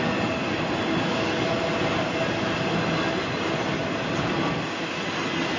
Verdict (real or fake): real